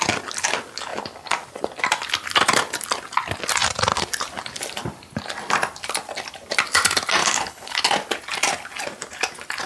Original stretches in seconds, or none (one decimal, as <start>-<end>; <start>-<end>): 0.0-7.2; 7.8-9.7